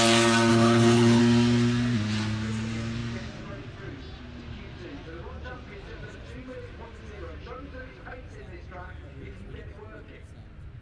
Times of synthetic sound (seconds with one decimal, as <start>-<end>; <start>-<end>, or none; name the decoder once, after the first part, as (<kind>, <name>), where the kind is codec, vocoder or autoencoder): 0.5-1.2 (codec, HILCodec)